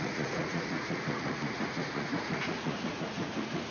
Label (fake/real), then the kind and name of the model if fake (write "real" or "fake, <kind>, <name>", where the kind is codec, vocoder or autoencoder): fake, vocoder, Vocos